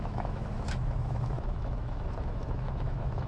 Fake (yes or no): yes